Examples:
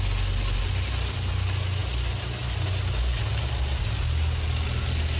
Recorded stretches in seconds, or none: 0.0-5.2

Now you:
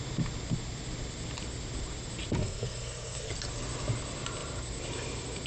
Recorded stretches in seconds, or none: 0.0-2.4; 3.3-5.5

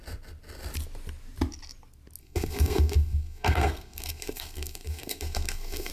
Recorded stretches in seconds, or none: 0.0-2.2

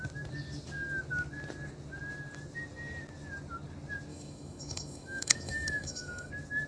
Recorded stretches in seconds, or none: 0.0-4.1; 6.3-6.7